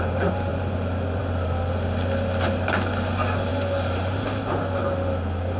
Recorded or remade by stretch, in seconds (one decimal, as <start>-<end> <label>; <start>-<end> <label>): 0.0-5.6 recorded

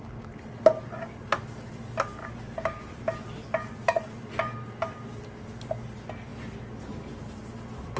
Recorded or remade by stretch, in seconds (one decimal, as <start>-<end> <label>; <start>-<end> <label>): 0.0-2.2 recorded; 2.2-3.0 remade; 3.0-8.0 recorded